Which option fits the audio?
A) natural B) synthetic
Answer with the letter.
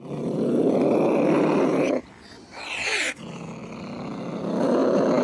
A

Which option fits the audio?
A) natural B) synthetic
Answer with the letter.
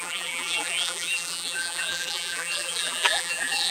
B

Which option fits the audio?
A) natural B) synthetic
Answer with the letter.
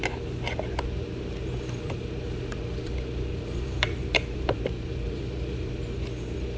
B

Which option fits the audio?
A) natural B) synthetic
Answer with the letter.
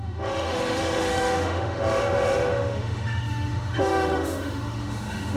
B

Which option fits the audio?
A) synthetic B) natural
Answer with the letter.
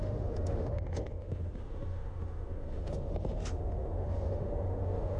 A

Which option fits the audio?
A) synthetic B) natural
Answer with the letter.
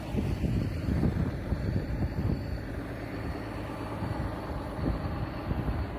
A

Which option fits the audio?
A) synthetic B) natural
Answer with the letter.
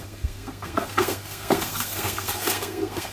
A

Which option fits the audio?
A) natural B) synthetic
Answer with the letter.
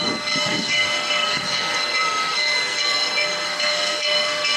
B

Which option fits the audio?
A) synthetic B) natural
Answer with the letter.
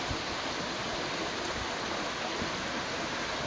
B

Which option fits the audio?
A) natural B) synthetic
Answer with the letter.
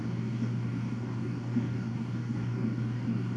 B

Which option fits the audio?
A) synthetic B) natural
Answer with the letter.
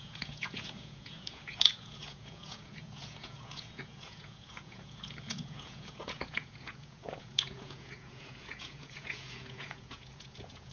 A